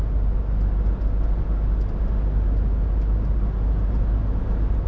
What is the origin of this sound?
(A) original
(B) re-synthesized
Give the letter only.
A